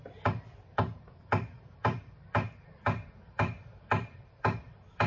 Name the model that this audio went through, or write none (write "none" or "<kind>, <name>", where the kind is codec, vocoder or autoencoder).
vocoder, BigVGAN v2